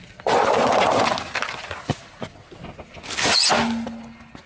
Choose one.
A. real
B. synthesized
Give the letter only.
A